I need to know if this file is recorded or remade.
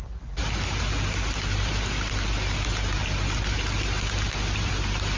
recorded